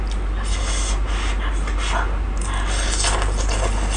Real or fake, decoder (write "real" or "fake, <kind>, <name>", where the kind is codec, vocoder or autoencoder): real